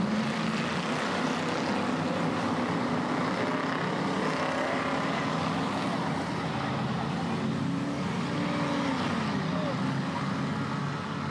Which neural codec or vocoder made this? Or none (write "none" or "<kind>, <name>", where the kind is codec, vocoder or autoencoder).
none